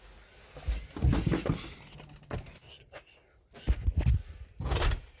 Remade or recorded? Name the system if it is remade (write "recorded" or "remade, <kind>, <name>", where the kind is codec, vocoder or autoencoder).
recorded